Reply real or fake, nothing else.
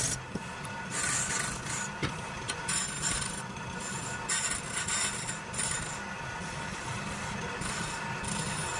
real